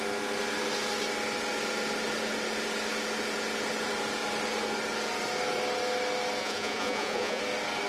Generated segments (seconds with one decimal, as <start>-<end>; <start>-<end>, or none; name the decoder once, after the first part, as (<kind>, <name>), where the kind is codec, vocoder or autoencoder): 6.4-7.4 (vocoder, Vocos)